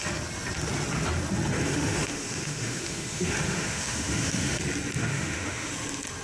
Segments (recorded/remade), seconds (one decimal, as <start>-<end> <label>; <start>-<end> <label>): 0.0-1.7 recorded; 1.7-4.6 remade; 4.6-5.1 recorded; 5.1-5.7 remade; 5.7-6.2 recorded